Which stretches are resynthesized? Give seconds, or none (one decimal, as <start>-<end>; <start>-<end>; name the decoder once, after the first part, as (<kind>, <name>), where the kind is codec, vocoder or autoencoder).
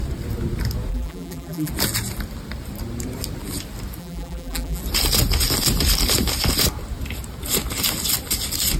0.9-1.7 (vocoder, BigVGAN v2); 4.0-4.8